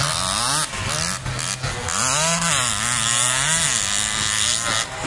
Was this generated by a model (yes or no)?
no